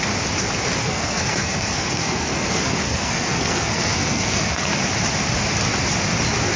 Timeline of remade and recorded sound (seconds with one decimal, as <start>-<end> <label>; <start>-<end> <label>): 0.0-0.8 recorded; 0.8-4.8 remade; 4.8-6.6 recorded